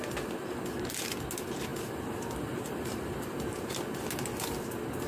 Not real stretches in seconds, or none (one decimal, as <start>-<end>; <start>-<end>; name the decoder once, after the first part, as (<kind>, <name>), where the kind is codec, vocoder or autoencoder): 1.7-4.2 (vocoder, BigVGAN v2)